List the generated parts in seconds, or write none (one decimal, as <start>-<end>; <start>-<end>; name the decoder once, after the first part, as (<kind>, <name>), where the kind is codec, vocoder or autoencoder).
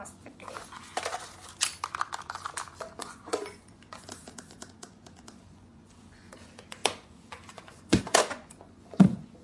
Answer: 0.0-0.9 (vocoder, Vocos); 2.8-9.4